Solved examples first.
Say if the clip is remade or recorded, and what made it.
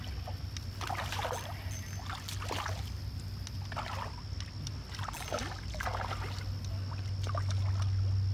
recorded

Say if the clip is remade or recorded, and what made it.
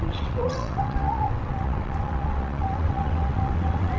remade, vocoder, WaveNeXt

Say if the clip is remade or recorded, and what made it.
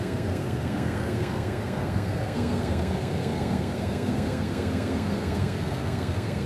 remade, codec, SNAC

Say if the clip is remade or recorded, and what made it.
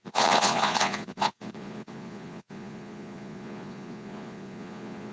remade, vocoder, Vocos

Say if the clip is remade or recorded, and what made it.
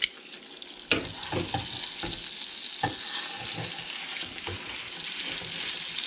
recorded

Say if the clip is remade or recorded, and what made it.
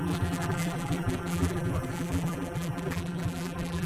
remade, vocoder, BigVGAN v2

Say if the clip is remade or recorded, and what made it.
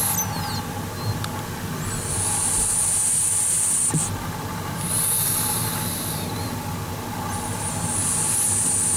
recorded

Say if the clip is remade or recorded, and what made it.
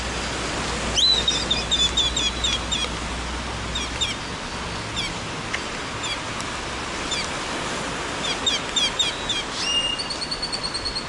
recorded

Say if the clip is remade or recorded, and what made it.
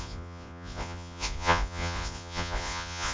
remade, vocoder, Vocos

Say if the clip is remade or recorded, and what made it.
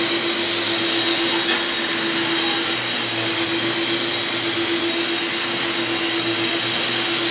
recorded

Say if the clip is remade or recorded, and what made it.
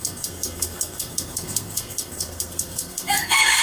remade, codec, SNAC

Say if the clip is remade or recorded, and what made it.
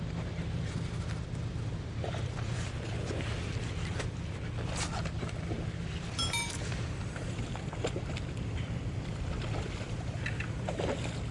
remade, vocoder, BigVGAN v2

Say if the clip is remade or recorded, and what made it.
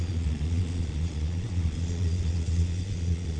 remade, vocoder, Vocos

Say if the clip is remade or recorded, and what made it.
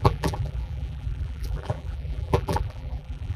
remade, vocoder, BigVGAN v2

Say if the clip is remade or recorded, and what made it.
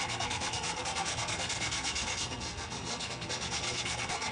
remade, codec, SNAC